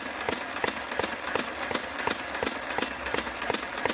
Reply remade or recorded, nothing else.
recorded